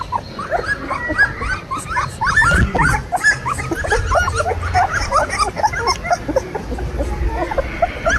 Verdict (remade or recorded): recorded